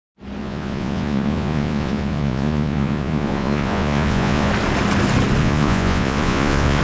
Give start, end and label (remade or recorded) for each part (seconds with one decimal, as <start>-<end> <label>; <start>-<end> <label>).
0.0-0.4 recorded; 0.4-4.5 remade; 4.5-5.4 recorded; 5.4-6.8 remade